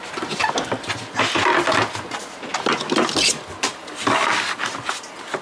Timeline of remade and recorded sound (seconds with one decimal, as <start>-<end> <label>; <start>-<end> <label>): 0.0-0.4 recorded; 0.4-1.2 remade; 1.2-5.4 recorded